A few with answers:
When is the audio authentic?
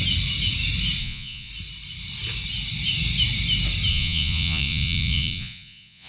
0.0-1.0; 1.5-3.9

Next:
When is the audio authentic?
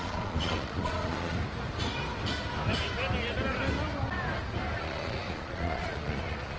1.4-4.8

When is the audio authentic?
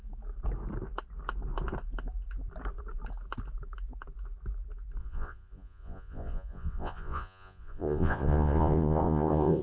0.0-5.0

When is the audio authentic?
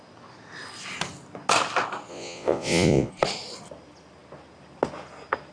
0.0-2.1; 3.1-5.5